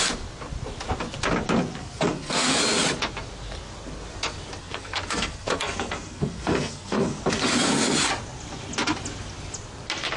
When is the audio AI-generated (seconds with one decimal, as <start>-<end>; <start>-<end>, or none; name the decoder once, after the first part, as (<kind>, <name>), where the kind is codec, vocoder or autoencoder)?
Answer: 1.8-2.6 (codec, SNAC); 4.6-7.2